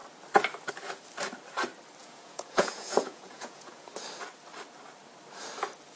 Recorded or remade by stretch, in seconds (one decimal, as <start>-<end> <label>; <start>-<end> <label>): 0.0-2.0 recorded; 2.0-3.9 remade; 3.9-6.0 recorded